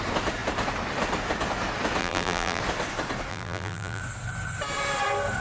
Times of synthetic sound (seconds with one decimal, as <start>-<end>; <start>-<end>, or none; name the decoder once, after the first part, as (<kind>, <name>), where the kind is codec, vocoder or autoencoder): 2.0-2.6 (vocoder, BigVGAN v2); 3.3-4.0